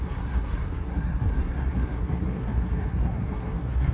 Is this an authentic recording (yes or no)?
no